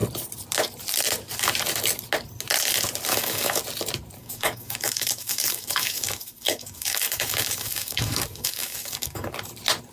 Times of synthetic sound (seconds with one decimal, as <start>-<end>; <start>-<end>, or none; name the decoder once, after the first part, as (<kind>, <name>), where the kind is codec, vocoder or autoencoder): 3.1-3.6 (codec, DAC); 4.2-9.3